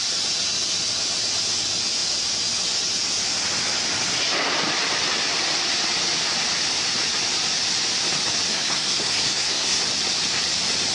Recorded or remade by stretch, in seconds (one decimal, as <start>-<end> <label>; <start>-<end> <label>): 0.0-8.5 recorded; 8.5-9.8 remade; 9.8-10.9 recorded